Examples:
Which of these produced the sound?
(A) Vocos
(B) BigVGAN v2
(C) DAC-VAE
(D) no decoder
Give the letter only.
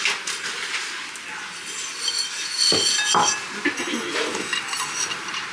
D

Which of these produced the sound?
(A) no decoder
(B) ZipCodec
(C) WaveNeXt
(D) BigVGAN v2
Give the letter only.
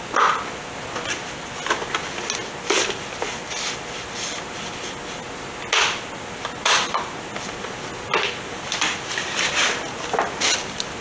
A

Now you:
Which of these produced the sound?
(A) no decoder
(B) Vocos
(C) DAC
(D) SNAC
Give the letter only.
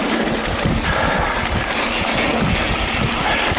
A